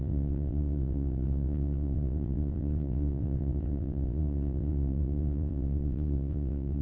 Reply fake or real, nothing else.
fake